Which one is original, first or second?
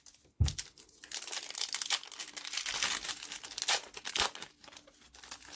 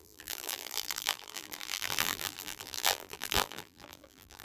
first